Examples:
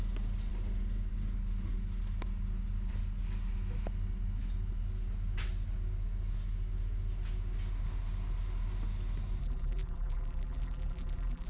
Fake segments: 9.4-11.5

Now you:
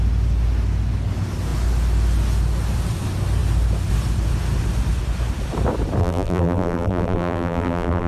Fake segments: 6.0-8.1

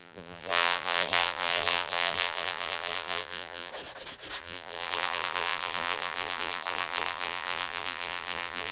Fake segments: 0.0-3.7; 4.4-8.7

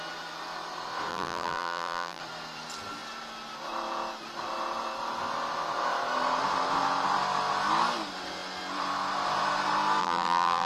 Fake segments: 1.1-2.2; 10.0-10.7

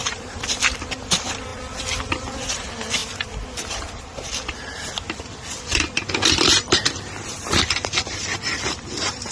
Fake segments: 0.0-9.3